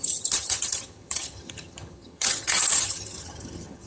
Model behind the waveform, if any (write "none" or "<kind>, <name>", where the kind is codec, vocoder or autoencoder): vocoder, HiFi-GAN